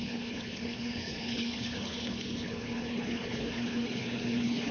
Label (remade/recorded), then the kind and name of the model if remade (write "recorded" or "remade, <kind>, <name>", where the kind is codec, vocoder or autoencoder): remade, codec, HILCodec